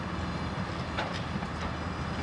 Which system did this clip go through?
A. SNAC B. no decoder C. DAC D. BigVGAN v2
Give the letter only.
B